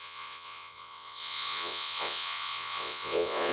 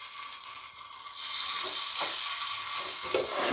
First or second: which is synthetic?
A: first